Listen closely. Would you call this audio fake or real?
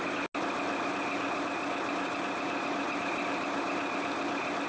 real